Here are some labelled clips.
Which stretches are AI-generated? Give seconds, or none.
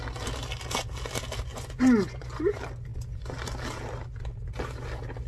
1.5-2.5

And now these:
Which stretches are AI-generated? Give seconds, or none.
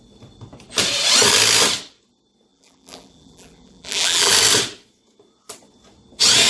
2.5-4.3